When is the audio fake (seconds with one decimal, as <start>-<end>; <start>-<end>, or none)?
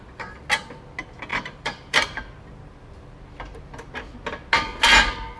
1.3-2.4